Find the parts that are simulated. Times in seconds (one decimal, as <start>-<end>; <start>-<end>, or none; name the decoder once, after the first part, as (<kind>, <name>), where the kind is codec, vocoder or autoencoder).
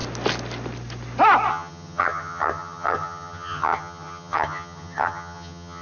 1.5-5.8 (vocoder, HiFi-GAN)